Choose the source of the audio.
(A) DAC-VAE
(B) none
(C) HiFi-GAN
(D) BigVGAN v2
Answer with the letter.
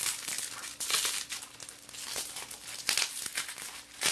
B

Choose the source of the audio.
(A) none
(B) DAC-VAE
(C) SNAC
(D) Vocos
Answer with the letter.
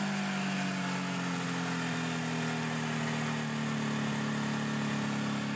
A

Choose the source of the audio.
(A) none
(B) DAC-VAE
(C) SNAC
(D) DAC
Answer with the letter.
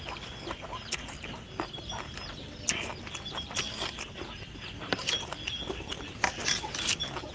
A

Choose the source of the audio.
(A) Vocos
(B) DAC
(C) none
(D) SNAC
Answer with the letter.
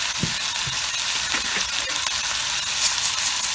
C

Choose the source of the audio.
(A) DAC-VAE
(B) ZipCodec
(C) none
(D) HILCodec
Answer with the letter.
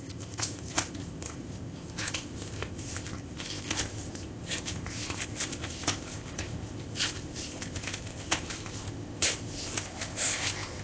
B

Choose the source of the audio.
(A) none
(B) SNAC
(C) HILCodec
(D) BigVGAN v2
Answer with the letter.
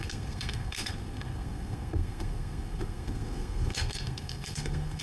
B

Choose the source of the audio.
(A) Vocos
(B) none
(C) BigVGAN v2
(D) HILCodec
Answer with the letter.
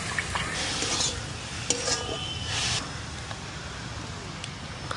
B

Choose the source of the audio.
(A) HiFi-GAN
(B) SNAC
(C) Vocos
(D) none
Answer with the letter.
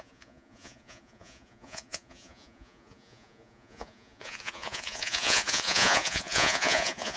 C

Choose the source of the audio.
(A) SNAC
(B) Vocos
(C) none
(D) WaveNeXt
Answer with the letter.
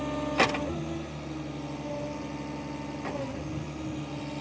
C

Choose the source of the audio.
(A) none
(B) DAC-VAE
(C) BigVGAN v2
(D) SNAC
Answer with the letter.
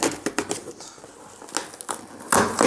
A